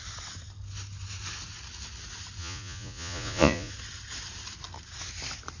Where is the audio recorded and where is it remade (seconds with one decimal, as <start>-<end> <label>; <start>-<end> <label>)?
0.0-2.4 recorded; 2.4-3.7 remade; 3.7-5.6 recorded